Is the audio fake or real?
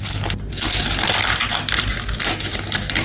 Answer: real